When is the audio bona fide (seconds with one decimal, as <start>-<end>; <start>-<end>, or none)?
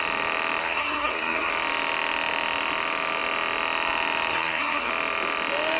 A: 0.0-0.6; 1.5-4.3; 4.9-5.8